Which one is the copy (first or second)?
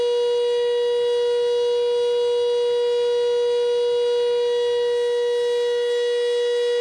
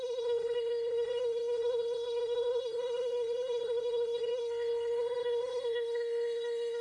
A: second